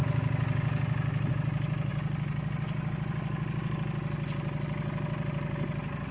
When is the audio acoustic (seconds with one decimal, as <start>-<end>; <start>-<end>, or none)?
0.0-6.1